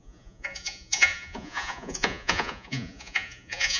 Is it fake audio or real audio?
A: fake